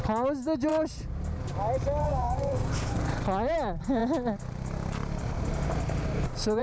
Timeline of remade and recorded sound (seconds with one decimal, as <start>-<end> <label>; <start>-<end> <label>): 0.0-2.0 recorded; 2.0-2.7 remade; 2.7-6.6 recorded